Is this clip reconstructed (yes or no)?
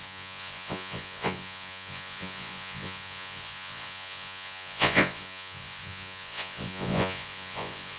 yes